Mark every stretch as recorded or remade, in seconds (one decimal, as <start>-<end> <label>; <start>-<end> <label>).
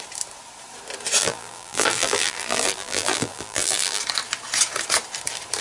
0.0-1.2 recorded; 1.2-4.0 remade; 4.0-5.6 recorded